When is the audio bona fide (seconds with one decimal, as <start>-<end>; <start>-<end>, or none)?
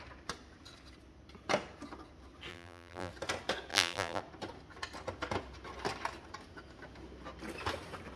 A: 0.0-2.5; 3.1-3.7; 4.2-8.2